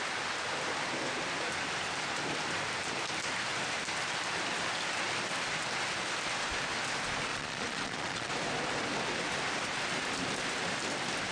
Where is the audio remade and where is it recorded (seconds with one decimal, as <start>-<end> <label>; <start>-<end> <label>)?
0.0-7.3 recorded; 7.3-8.3 remade; 8.3-11.3 recorded

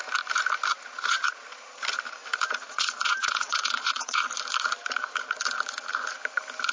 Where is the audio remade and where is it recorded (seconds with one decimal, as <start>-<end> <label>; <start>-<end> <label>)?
0.0-0.7 recorded; 0.7-1.8 remade; 1.8-2.6 recorded; 2.6-4.2 remade; 4.2-6.7 recorded

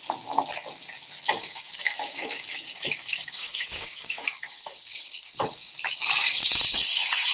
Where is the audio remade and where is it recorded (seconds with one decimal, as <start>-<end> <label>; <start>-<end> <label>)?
0.0-1.3 recorded; 1.3-5.7 remade; 5.7-6.2 recorded; 6.2-7.3 remade

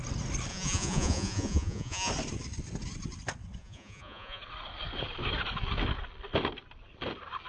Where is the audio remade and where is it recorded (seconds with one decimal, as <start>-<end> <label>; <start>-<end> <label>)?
0.0-0.5 recorded; 0.5-2.1 remade; 2.1-3.6 recorded; 3.6-4.4 remade; 4.4-7.5 recorded

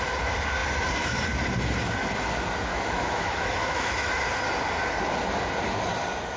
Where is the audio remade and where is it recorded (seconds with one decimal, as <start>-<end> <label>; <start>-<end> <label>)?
0.0-2.7 recorded; 2.7-4.1 remade; 4.1-6.4 recorded